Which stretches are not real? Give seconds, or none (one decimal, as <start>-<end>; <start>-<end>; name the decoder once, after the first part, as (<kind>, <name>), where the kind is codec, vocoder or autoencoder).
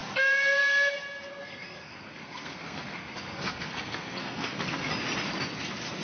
1.3-4.9 (codec, SNAC)